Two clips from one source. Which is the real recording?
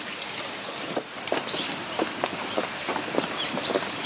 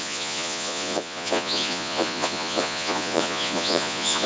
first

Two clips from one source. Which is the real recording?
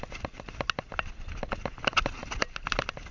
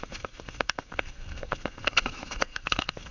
first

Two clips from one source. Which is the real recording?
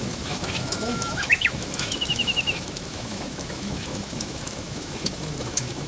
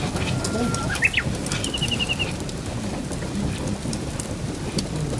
second